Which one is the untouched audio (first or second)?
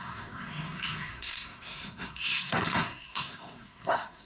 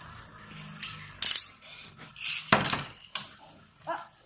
second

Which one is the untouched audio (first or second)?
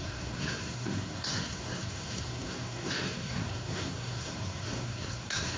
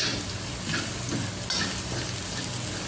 second